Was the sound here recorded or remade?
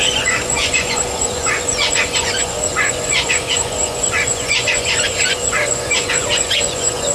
remade